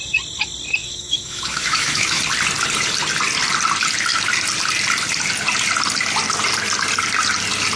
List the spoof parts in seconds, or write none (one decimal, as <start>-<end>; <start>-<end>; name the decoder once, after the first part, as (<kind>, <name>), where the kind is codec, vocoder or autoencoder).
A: 0.8-2.2 (autoencoder, DAC-VAE)